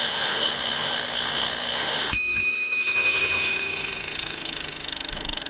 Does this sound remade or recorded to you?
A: remade